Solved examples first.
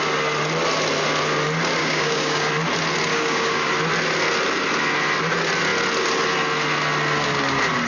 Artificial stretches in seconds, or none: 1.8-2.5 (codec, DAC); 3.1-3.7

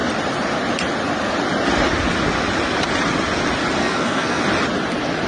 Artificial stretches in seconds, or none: 3.8-4.4 (codec, SNAC)

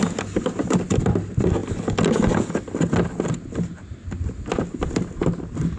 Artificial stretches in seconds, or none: none

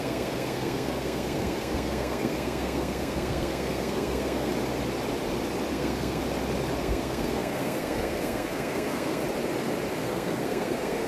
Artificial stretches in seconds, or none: 0.0-4.5 (codec, SNAC); 5.7-6.2; 6.8-9.2; 9.9-11.1